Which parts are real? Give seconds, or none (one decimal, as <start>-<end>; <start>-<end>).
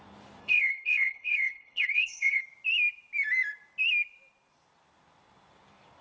0.0-0.4; 2.4-6.0